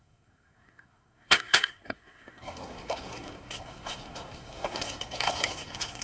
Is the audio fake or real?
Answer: fake